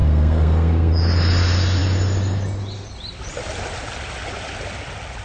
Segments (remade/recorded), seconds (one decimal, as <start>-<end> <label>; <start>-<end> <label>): 0.0-0.9 remade; 0.9-5.2 recorded